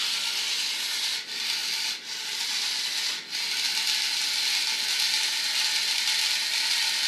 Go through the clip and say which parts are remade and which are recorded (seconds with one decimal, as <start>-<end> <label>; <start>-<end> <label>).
0.0-7.1 recorded